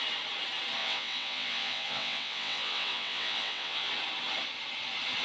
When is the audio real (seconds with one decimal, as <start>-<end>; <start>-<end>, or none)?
0.0-0.8; 3.9-5.2